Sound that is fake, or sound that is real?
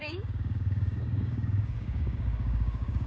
fake